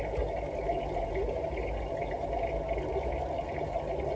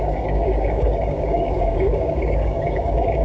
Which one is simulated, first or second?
second